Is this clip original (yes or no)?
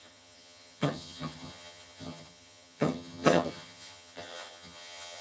no